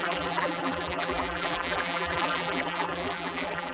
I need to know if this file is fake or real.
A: fake